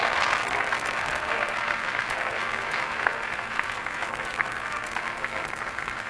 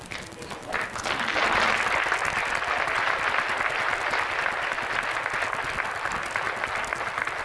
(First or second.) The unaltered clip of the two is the second